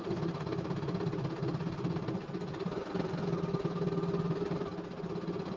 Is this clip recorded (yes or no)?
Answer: yes